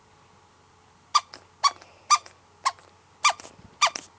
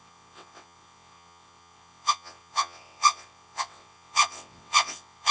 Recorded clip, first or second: first